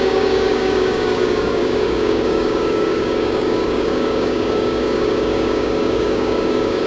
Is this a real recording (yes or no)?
no